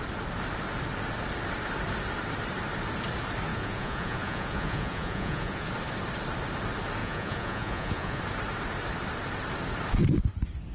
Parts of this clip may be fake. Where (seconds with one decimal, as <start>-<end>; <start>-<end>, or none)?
3.5-5.7; 7.0-8.2